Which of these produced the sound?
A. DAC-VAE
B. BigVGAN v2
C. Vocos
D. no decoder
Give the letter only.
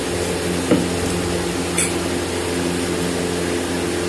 D